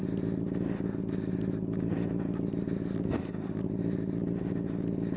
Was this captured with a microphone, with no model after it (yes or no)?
yes